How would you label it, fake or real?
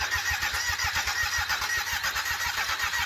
real